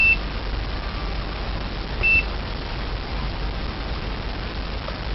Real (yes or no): yes